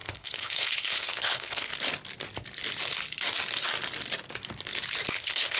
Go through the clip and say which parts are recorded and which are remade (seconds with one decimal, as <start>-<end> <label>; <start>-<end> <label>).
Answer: 0.0-1.7 remade; 1.7-5.1 recorded; 5.1-5.6 remade